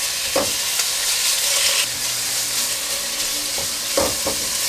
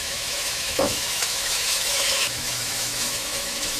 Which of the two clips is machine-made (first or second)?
second